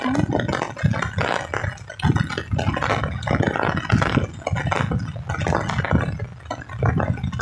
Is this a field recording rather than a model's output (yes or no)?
yes